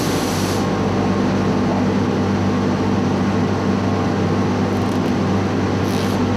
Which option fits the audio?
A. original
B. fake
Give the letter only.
A